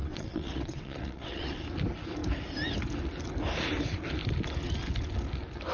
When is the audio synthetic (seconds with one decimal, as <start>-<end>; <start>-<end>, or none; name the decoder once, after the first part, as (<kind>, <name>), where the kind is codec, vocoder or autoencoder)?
0.0-1.6 (vocoder, WaveNeXt)

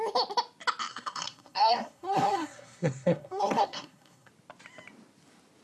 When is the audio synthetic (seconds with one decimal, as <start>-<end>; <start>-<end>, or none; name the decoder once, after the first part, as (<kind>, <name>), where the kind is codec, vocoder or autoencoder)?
0.9-4.3 (codec, SNAC)

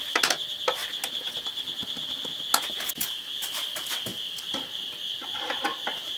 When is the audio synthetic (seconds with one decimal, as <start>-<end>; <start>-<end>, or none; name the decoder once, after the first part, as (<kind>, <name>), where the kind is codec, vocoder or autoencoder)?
none

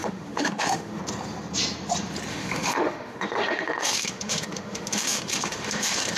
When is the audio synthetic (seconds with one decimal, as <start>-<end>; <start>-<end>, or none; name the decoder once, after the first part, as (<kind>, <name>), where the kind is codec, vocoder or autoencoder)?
0.0-1.0 (autoencoder, DAC-VAE); 2.3-6.2

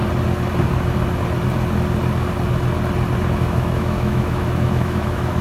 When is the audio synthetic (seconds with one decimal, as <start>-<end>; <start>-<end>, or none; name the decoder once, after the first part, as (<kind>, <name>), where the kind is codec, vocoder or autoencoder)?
3.2-5.4 (autoencoder, DAC-VAE)

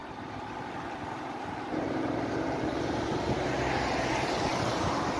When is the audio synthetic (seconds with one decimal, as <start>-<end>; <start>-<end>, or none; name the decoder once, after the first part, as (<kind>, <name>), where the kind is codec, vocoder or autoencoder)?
0.0-3.1 (vocoder, BigVGAN v2); 4.5-5.2

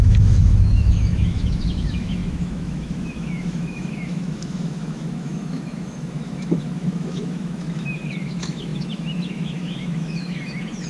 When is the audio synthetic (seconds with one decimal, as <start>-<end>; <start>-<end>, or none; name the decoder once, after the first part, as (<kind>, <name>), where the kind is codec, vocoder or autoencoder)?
0.0-10.9 (autoencoder, DAC-VAE)